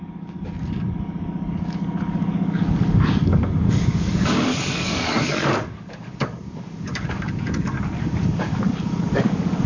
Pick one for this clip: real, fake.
fake